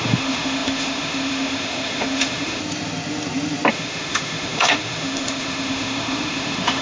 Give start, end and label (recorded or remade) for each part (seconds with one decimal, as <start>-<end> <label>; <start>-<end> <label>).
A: 0.0-2.6 remade; 2.6-3.7 recorded; 3.7-6.8 remade